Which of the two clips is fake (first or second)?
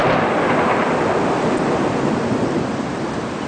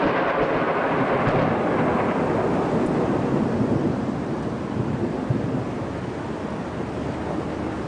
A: first